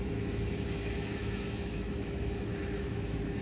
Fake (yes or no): yes